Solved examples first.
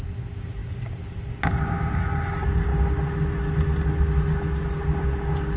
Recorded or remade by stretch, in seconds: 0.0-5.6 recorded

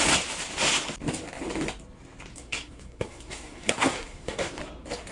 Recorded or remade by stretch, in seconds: 0.0-2.3 recorded; 2.3-4.6 remade; 4.6-5.1 recorded